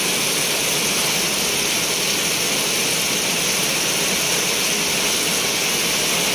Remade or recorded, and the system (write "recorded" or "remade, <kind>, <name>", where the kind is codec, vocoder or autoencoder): recorded